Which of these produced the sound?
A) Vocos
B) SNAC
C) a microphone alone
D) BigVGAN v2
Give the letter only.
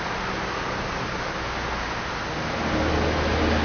C